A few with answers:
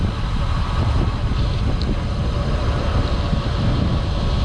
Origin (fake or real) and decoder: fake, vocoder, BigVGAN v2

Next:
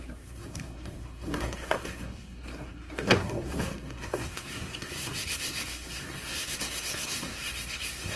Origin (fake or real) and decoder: fake, codec, SNAC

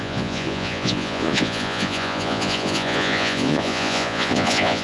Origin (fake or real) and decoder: fake, vocoder, Vocos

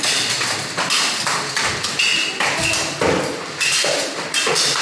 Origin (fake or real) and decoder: real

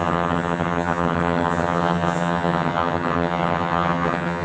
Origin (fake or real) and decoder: fake, vocoder, HiFi-GAN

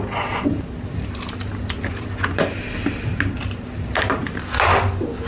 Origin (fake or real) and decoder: real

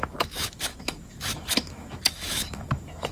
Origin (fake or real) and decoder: fake, autoencoder, DAC-VAE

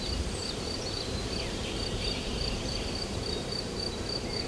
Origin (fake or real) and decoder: fake, vocoder, BigVGAN v2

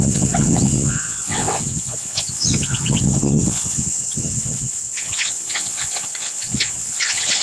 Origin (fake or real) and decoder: fake, vocoder, WaveNeXt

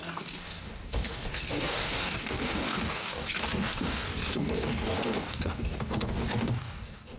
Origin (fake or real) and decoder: fake, codec, DAC